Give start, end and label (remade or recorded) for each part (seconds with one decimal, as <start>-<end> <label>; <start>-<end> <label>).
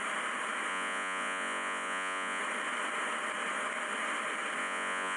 0.0-0.7 recorded; 0.7-2.4 remade; 2.4-4.6 recorded; 4.6-5.2 remade